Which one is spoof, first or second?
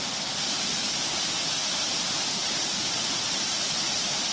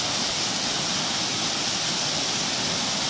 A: first